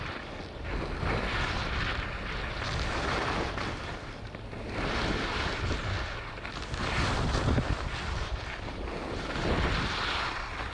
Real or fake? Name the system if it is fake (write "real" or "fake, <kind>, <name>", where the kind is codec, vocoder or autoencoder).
real